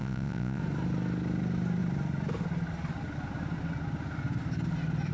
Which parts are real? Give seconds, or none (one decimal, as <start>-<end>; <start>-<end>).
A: 0.6-5.1

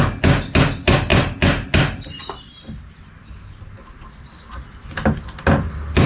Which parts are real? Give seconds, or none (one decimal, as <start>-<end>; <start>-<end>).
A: 0.0-6.1

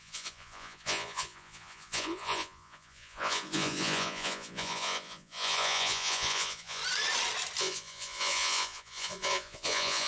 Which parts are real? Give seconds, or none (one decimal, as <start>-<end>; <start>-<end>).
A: 6.8-7.6